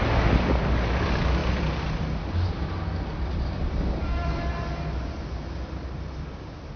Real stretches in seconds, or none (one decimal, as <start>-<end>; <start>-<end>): 0.0-1.4; 4.5-6.8